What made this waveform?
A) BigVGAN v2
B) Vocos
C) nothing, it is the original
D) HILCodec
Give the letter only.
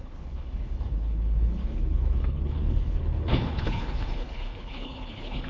D